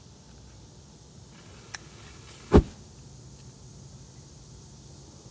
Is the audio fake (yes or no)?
no